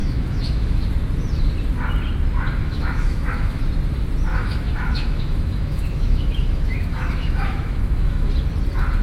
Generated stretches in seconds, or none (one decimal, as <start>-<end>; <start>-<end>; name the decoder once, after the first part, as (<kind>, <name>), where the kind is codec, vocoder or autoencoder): 0.0-0.8 (autoencoder, DAC-VAE); 2.6-3.6; 4.3-8.3